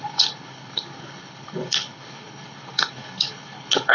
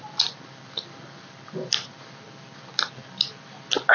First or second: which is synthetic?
first